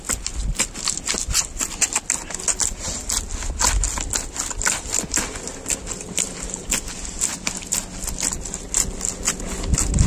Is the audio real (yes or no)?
yes